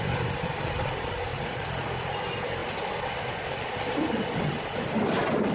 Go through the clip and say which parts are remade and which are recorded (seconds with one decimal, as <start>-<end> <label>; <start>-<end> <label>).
0.0-1.3 recorded; 1.3-2.1 remade; 2.1-5.5 recorded